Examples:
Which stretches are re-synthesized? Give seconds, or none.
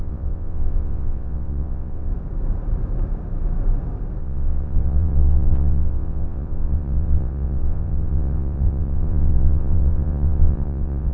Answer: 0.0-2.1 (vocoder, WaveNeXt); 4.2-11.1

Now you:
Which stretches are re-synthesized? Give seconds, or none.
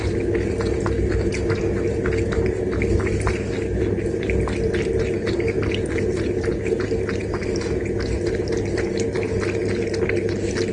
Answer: none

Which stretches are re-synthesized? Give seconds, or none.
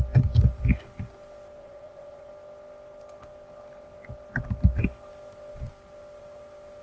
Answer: 1.6-2.3 (vocoder, Vocos)